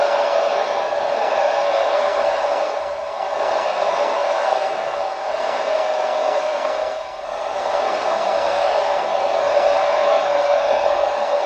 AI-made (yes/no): yes